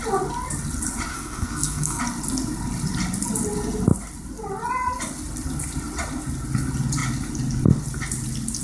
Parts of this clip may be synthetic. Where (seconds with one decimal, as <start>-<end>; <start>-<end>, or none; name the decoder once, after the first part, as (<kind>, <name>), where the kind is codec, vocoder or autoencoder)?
1.1-2.0 (codec, SNAC)